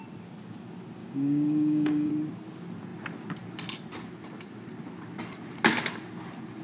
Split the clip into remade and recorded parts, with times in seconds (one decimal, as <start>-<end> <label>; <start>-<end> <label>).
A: 0.0-1.0 recorded; 1.0-2.1 remade; 2.1-6.6 recorded